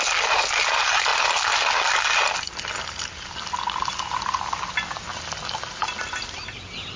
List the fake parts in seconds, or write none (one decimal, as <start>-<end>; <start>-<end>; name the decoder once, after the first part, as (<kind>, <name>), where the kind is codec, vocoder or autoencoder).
none